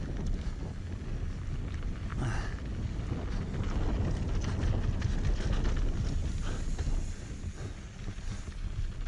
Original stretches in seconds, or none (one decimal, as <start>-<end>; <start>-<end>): 0.0-9.1

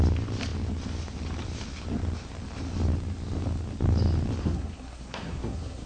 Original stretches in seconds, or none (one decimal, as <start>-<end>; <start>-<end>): 0.0-4.4

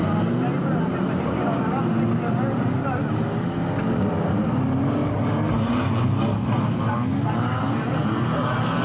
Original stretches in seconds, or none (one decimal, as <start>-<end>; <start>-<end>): 0.0-8.8

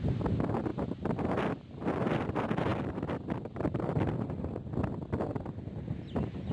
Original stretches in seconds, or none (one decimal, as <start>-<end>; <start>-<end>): 0.0-6.5

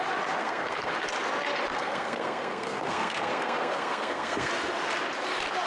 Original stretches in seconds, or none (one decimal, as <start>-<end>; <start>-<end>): 0.0-0.4; 0.9-1.7; 4.5-5.7

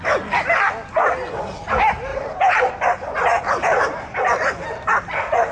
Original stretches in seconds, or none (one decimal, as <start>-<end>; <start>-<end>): 0.0-2.1; 2.7-3.3; 4.2-5.5

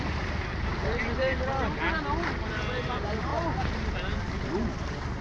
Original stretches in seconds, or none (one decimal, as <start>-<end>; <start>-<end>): 1.2-2.8; 3.3-5.2

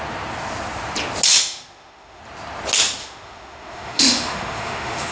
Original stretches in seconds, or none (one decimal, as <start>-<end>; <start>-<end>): 0.0-1.4; 2.2-3.0